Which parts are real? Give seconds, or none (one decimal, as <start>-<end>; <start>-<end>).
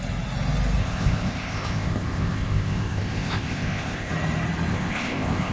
0.0-0.8; 4.1-4.7